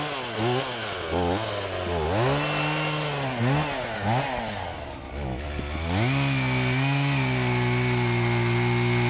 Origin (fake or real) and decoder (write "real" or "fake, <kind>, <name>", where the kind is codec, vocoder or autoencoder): real